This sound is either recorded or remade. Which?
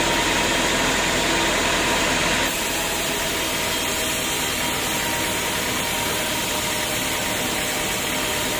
recorded